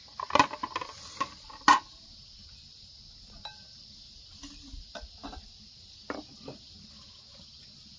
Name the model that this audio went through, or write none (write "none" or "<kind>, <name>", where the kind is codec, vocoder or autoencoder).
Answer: none